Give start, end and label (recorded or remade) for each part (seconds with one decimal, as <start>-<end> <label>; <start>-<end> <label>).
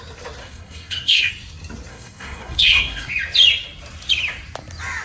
0.0-0.4 recorded; 0.4-1.3 remade; 1.3-1.9 recorded; 1.9-3.1 remade; 3.1-5.0 recorded